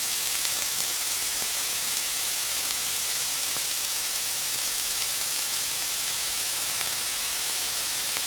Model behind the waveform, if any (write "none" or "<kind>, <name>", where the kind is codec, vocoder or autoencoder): autoencoder, DAC-VAE